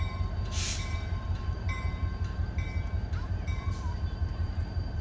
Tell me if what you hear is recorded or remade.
remade